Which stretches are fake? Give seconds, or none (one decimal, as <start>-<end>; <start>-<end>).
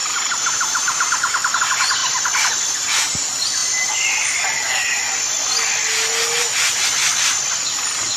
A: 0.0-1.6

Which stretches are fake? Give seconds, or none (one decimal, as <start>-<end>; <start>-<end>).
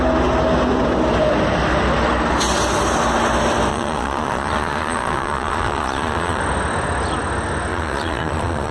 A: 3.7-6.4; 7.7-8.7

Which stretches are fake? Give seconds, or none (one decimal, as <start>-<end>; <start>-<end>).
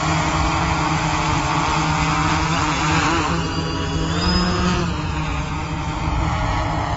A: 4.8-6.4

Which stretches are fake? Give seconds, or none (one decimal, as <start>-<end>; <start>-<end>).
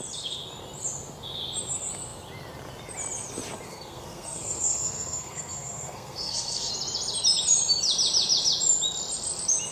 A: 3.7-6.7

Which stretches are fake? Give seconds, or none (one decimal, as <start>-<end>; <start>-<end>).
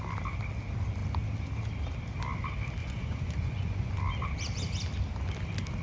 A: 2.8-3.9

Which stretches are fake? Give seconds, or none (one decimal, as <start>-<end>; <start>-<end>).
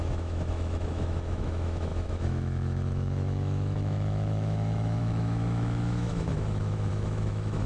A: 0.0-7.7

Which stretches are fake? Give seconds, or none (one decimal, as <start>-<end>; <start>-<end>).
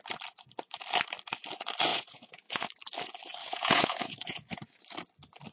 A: 1.9-2.7; 3.4-4.7